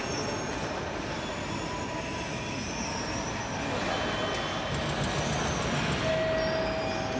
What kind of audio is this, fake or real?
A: real